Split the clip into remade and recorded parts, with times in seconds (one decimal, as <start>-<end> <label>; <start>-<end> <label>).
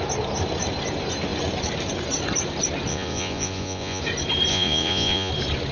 0.0-2.9 recorded; 2.9-4.0 remade; 4.0-4.5 recorded; 4.5-5.3 remade; 5.3-5.7 recorded